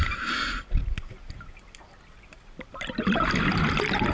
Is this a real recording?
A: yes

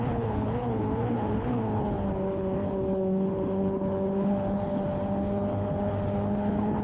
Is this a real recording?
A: no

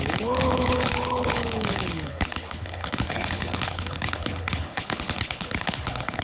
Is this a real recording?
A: no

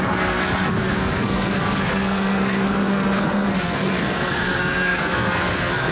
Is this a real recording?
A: no